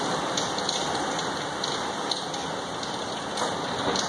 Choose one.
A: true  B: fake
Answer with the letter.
A